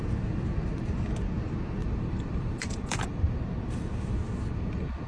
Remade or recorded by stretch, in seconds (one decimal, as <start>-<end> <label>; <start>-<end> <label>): 0.0-1.8 recorded; 1.8-3.2 remade; 3.2-5.1 recorded